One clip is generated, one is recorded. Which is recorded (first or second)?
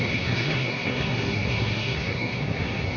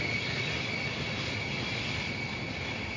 second